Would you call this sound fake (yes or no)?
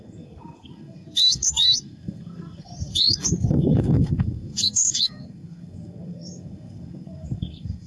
yes